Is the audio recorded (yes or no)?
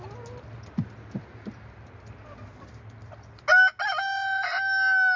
yes